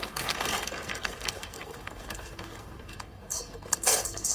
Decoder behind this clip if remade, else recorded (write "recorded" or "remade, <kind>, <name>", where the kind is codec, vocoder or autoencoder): remade, codec, SNAC